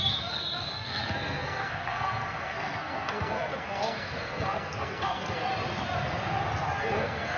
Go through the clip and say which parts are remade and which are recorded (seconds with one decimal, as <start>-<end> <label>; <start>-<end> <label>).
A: 0.0-5.5 remade; 5.5-6.8 recorded; 6.8-7.4 remade